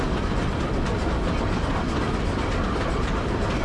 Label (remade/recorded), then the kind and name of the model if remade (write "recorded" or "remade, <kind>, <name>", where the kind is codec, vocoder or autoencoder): recorded